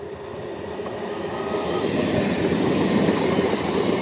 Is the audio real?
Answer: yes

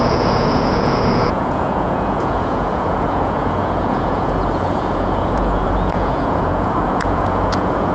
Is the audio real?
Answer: no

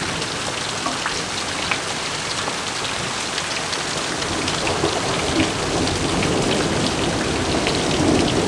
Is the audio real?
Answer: yes